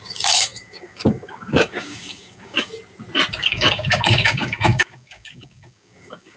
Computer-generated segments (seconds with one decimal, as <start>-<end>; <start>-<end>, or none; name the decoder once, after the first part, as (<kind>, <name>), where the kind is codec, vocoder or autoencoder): 0.0-2.7 (codec, DAC); 3.3-6.4